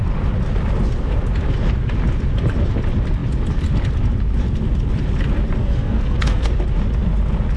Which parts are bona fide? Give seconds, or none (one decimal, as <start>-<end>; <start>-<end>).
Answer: 0.0-5.6; 6.5-7.6

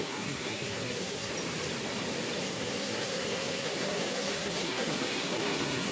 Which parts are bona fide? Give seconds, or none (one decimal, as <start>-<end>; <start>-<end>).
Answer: 1.3-2.4

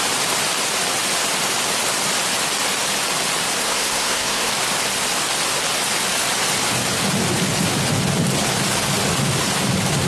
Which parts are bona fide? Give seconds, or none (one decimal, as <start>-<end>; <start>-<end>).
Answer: 0.0-3.6; 4.5-10.1

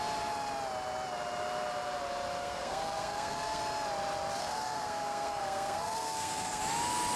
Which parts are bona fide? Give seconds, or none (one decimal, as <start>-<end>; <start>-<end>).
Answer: 0.0-2.4; 3.6-4.4; 6.6-7.2